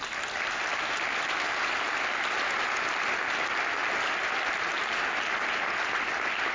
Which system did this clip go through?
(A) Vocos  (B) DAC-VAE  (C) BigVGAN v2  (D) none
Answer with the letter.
D